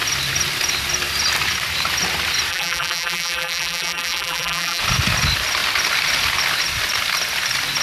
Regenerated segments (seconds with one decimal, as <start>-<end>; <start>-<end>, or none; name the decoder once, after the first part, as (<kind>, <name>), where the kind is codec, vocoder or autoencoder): 2.5-4.8 (vocoder, BigVGAN v2)